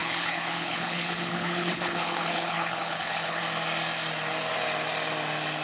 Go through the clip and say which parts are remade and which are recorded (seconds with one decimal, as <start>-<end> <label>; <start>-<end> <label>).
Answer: 0.0-3.4 remade; 3.4-5.6 recorded